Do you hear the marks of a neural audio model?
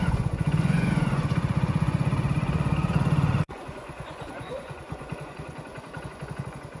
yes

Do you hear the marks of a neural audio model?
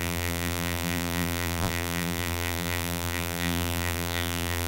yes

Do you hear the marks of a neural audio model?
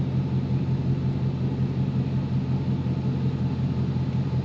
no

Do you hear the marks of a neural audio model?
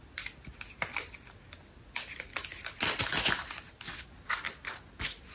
no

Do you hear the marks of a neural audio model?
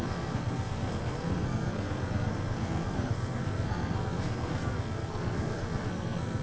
yes